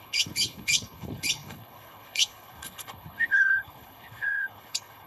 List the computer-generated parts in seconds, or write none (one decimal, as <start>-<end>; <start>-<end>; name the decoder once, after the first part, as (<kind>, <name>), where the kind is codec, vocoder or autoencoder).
0.0-5.1 (codec, HILCodec)